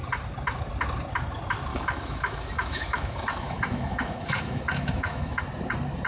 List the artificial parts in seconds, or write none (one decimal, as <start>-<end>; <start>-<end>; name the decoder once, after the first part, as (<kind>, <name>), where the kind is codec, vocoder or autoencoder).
1.7-5.4 (autoencoder, DAC-VAE)